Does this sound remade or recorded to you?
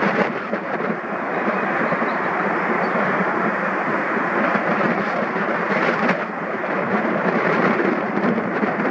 remade